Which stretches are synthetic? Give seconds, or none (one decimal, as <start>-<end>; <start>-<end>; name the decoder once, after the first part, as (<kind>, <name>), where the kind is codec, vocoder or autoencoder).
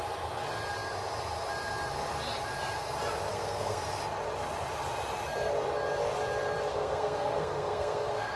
3.3-3.8 (codec, SNAC); 6.7-8.4